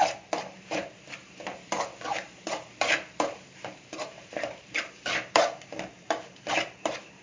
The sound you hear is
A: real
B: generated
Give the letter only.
B